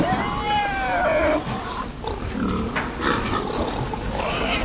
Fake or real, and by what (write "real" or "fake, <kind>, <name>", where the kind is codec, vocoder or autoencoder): real